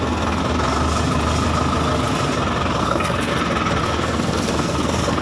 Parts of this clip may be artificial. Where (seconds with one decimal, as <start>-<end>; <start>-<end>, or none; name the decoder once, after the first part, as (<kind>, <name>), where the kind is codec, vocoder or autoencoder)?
0.0-0.4 (codec, SNAC); 2.8-3.3; 3.8-5.2